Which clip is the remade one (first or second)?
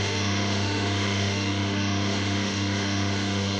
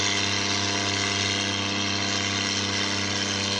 first